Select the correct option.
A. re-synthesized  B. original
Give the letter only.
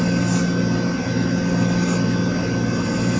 B